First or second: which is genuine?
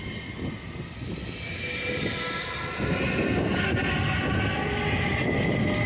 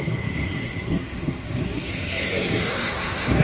first